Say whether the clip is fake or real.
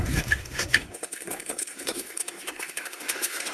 fake